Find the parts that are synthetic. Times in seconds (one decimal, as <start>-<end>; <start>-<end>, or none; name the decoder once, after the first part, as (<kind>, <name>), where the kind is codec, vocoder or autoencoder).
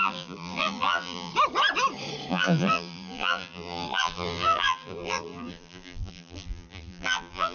0.0-1.3 (vocoder, BigVGAN v2); 2.3-7.5